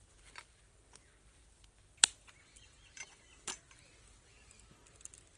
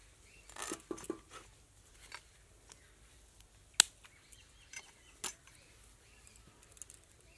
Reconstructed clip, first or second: first